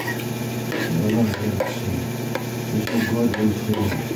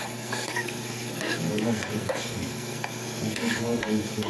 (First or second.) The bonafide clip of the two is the first